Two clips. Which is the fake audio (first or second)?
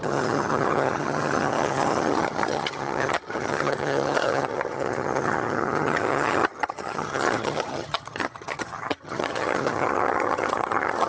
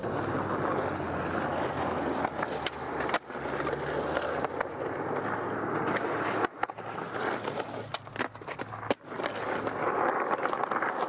first